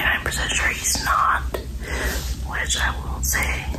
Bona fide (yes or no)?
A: yes